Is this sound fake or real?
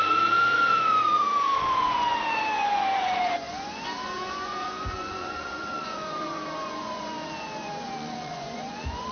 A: fake